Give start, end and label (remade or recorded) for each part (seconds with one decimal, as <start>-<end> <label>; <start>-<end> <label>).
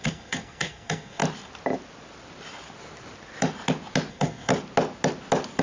0.0-1.2 remade; 1.2-4.1 recorded; 4.1-4.5 remade; 4.5-5.6 recorded